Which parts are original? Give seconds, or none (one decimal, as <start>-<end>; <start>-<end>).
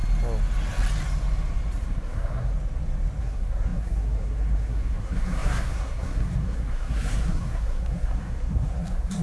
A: 0.0-1.8; 2.5-3.2